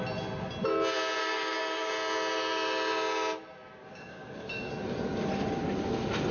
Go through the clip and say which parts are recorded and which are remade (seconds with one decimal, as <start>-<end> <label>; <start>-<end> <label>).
0.0-1.2 recorded; 1.2-1.9 remade; 1.9-3.8 recorded; 3.8-4.7 remade; 4.7-6.3 recorded